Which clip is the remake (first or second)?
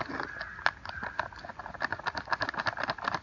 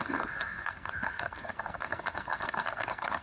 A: second